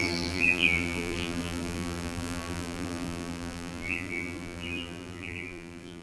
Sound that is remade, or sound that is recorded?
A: remade